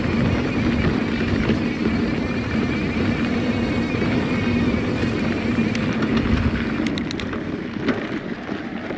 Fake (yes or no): no